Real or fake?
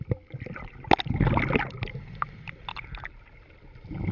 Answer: real